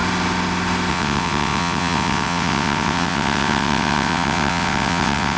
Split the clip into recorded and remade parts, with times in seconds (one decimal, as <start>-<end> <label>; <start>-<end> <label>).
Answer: 0.0-0.9 recorded; 0.9-5.4 remade